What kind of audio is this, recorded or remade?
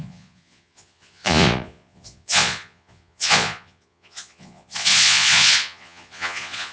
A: remade